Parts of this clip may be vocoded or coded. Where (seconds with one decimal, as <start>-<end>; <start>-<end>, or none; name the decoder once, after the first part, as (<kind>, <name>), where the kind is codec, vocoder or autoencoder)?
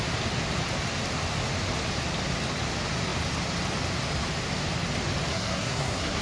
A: 5.3-6.2 (codec, SNAC)